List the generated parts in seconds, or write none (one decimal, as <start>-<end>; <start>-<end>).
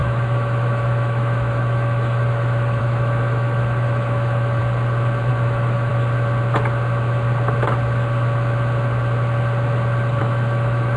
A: 0.0-4.6; 5.3-5.9; 10.2-11.0